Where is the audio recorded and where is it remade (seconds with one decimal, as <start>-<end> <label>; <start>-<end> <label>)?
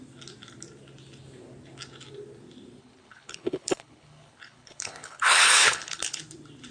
0.0-2.8 recorded; 2.8-6.2 remade; 6.2-6.7 recorded